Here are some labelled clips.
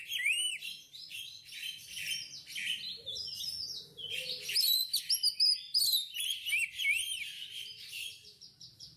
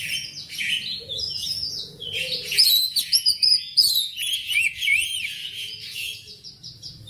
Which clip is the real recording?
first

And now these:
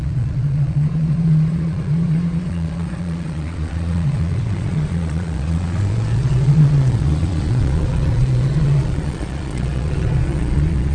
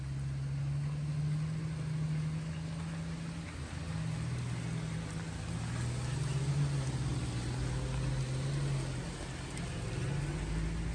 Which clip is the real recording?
second